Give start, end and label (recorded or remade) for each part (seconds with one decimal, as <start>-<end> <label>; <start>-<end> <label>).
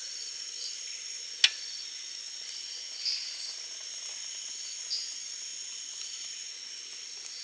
0.0-7.4 recorded